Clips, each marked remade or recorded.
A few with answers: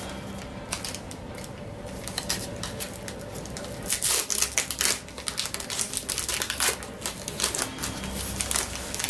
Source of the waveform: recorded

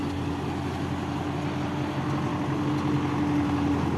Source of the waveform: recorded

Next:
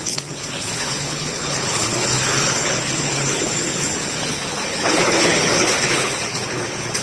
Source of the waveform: remade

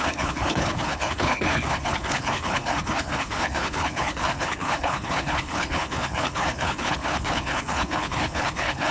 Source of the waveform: remade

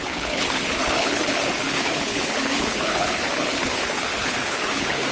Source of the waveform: remade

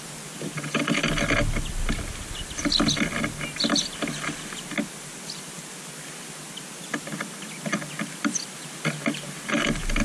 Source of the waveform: recorded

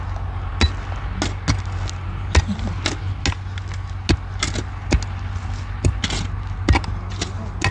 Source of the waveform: recorded